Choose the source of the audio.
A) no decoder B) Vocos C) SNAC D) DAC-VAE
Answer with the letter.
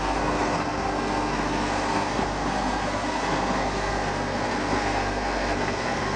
C